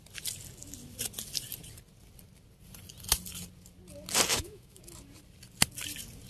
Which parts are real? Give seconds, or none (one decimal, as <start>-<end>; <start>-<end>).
0.0-4.3; 4.8-6.3